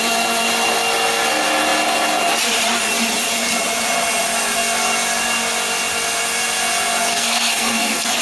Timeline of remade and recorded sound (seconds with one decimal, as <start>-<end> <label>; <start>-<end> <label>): 0.0-7.1 recorded; 7.1-8.2 remade